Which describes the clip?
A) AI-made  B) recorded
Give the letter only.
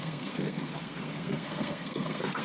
A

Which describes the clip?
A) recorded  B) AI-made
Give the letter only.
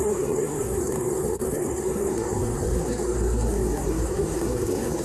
B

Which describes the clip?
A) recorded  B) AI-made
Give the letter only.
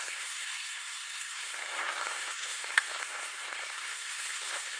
B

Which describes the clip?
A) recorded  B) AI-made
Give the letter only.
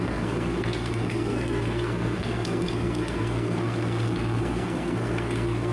B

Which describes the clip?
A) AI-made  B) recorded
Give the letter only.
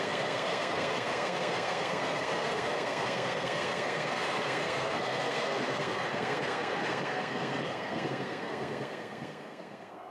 A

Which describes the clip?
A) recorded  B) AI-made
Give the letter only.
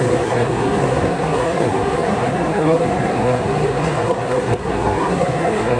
B